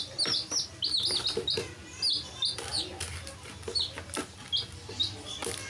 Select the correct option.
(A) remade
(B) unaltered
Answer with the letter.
B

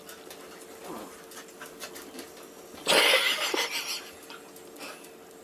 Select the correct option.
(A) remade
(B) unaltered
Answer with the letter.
B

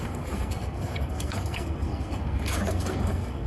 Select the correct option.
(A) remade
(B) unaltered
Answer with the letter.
A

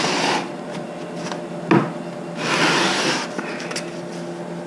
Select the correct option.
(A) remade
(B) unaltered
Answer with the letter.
B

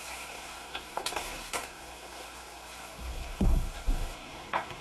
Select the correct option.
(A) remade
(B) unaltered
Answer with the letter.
A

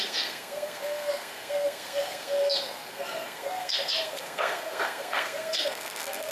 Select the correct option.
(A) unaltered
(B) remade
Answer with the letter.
B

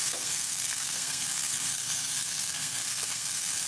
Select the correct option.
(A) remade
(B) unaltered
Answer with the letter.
A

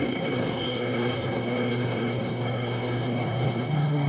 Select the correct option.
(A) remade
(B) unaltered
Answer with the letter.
A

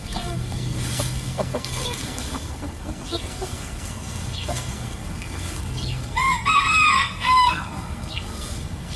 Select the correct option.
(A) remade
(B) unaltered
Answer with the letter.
A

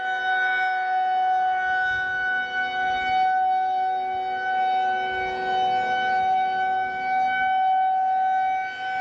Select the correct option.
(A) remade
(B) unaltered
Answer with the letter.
B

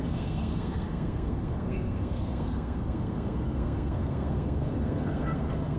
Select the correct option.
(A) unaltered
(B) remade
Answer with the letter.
B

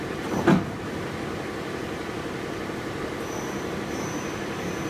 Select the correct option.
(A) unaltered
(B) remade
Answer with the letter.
A